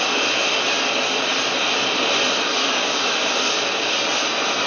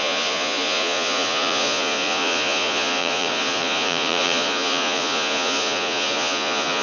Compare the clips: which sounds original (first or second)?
first